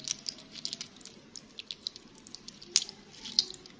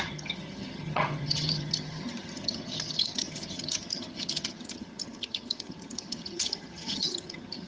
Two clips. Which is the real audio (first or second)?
first